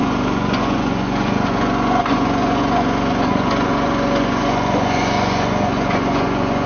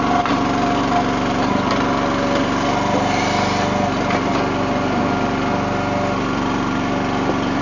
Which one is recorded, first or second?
second